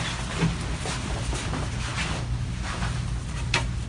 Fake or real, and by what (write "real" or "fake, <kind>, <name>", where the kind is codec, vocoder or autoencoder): real